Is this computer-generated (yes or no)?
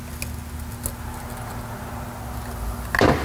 no